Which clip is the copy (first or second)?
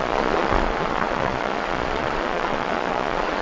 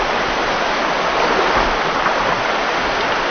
first